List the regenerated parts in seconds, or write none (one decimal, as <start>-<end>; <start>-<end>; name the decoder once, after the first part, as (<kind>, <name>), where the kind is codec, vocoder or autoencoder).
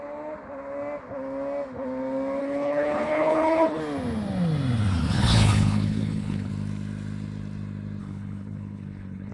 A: 2.4-3.8 (codec, HILCodec); 5.0-6.5; 8.0-9.3